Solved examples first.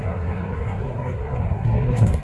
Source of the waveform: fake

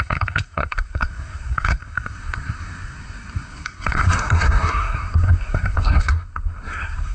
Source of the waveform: fake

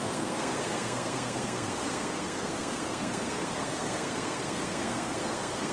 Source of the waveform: fake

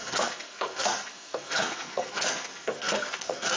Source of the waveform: fake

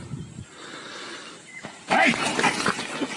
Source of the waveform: real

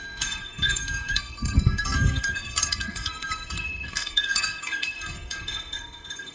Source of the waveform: fake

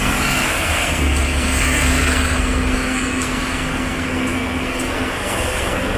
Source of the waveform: fake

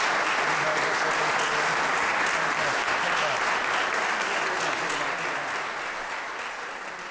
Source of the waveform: real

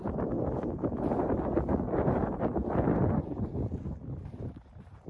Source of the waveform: real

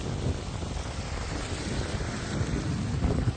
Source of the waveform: real